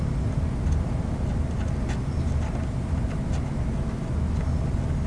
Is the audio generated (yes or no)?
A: no